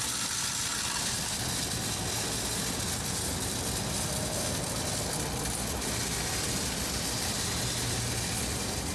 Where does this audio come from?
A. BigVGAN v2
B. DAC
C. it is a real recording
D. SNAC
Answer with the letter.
C